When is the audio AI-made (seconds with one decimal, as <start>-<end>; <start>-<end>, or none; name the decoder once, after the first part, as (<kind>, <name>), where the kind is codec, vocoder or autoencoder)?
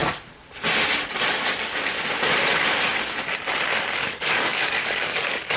4.0-5.6 (codec, DAC)